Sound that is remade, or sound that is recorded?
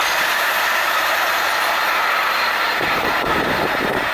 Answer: remade